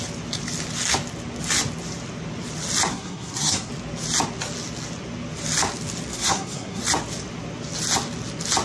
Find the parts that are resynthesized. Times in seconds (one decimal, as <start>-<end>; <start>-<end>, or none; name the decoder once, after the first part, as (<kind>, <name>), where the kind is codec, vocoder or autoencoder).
2.9-3.7 (codec, SNAC); 6.1-6.8